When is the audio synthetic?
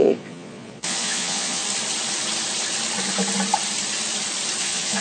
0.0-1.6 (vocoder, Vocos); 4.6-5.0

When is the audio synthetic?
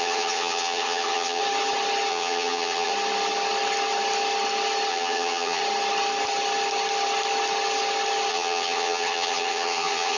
0.0-1.4 (vocoder, HiFi-GAN); 2.1-2.9; 4.9-5.6; 8.3-10.2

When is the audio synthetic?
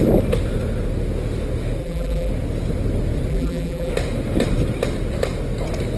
1.8-2.3 (vocoder, BigVGAN v2); 3.3-3.9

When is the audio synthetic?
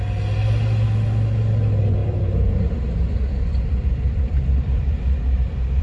2.0-5.8 (vocoder, BigVGAN v2)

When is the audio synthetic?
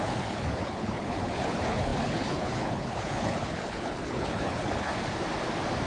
0.0-4.9 (codec, HILCodec)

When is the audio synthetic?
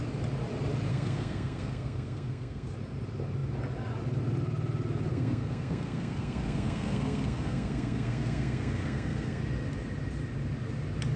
0.9-2.7 (codec, SNAC); 5.1-9.4